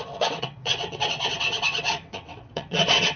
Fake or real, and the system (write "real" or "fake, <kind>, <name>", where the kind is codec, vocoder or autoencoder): fake, vocoder, WaveNeXt